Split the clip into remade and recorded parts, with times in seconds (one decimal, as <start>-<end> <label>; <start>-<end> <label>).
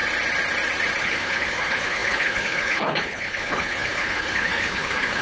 0.0-1.0 recorded; 1.0-5.2 remade